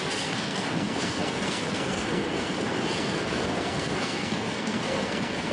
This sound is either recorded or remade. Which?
remade